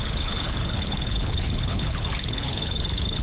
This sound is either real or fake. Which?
fake